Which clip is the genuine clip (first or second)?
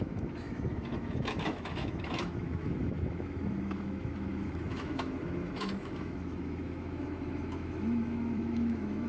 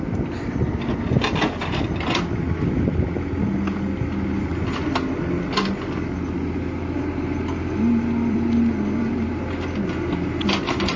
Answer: second